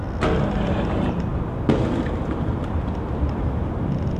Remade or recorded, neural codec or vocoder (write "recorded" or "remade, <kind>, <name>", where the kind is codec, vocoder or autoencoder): recorded